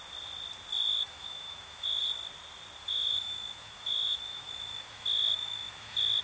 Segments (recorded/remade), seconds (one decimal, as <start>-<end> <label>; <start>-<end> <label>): 0.0-0.9 recorded; 0.9-2.0 remade; 2.0-2.8 recorded; 2.8-6.2 remade